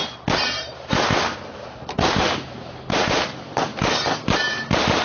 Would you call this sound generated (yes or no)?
yes